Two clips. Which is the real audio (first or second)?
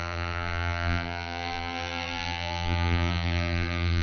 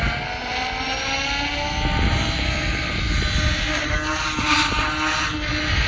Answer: second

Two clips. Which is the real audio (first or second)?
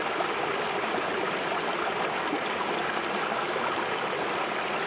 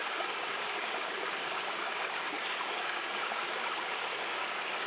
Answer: first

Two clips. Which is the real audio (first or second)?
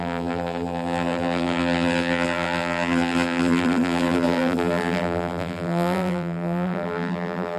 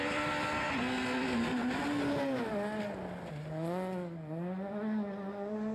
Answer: second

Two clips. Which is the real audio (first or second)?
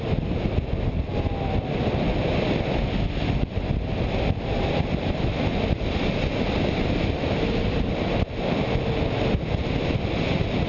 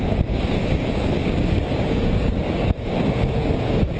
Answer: first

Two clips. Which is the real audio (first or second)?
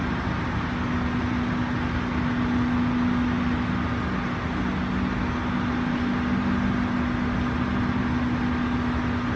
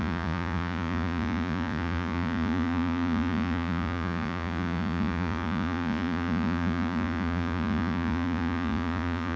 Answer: first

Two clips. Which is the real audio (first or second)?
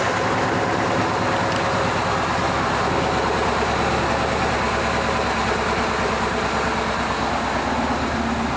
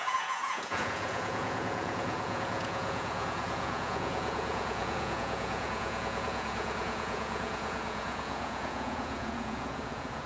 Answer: first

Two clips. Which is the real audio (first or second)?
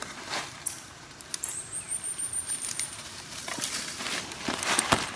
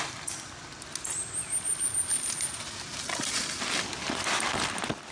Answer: second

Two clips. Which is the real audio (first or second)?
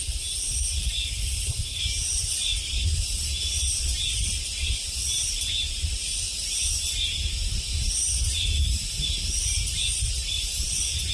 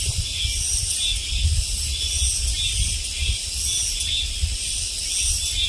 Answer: second